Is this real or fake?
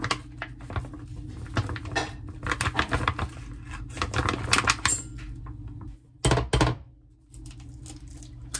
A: real